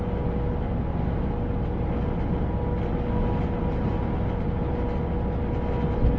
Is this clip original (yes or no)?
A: yes